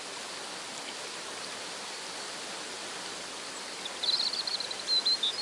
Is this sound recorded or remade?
recorded